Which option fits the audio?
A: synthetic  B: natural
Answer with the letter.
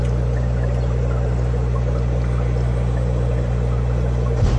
B